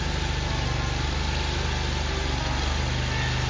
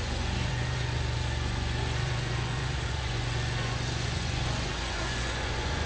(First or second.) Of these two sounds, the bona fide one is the first